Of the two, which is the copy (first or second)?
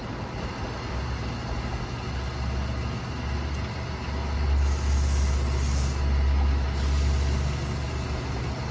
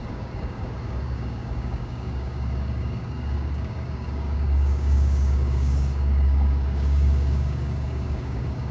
second